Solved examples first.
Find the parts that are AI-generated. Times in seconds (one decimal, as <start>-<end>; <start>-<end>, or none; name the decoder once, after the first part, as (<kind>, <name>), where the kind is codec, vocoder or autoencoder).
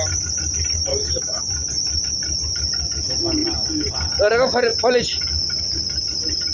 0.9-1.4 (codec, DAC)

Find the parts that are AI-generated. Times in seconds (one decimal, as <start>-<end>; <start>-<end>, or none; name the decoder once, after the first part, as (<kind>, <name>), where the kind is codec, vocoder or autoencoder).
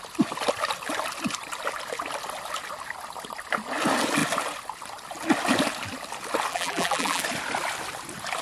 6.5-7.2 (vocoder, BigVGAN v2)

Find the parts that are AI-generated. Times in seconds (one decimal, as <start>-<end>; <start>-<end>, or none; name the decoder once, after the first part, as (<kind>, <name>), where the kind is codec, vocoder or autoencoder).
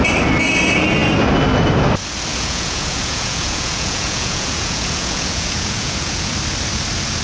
2.3-6.3 (vocoder, Vocos)